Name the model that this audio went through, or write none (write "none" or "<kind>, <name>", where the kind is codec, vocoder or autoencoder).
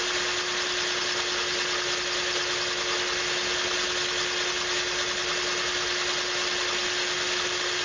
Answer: none